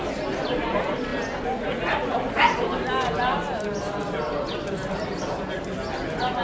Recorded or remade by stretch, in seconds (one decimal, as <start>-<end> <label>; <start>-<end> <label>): 0.0-6.4 recorded